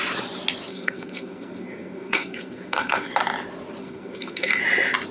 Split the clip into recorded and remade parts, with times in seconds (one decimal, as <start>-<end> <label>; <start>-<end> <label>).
0.0-0.7 recorded; 0.7-3.1 remade; 3.1-3.8 recorded; 3.8-4.6 remade; 4.6-5.1 recorded

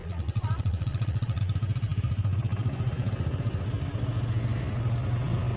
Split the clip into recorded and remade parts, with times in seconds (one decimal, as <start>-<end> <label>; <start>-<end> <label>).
0.0-1.4 remade; 1.4-5.6 recorded

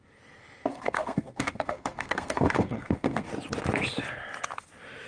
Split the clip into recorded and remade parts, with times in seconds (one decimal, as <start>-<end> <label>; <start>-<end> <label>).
0.0-0.7 recorded; 0.7-3.3 remade; 3.3-5.1 recorded

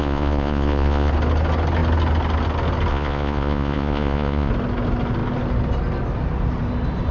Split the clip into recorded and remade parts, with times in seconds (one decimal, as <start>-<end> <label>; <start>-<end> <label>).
0.0-1.1 remade; 1.1-2.9 recorded; 2.9-4.5 remade; 4.5-7.1 recorded

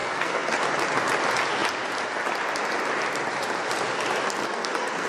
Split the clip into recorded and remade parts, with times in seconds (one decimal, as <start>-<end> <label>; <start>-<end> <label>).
0.0-0.6 remade; 0.6-4.4 recorded; 4.4-5.1 remade

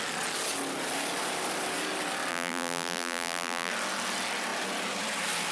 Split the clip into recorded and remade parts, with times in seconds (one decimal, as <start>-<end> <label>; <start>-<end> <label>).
0.0-2.3 recorded; 2.3-3.7 remade; 3.7-5.5 recorded

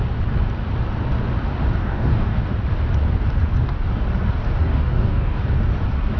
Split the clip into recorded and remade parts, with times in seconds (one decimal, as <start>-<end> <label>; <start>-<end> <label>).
0.0-1.8 recorded; 1.8-2.4 remade; 2.4-4.6 recorded; 4.6-5.4 remade; 5.4-6.2 recorded

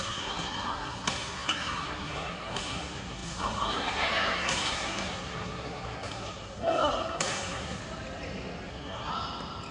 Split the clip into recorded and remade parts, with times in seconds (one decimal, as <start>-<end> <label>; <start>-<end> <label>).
0.0-7.8 remade; 7.8-8.7 recorded; 8.7-9.1 remade; 9.1-9.7 recorded